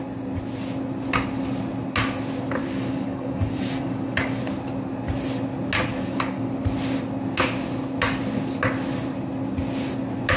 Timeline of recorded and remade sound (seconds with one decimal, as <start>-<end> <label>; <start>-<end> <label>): 0.0-2.6 recorded; 2.6-4.4 remade; 4.4-5.9 recorded; 5.9-6.5 remade; 6.5-10.4 recorded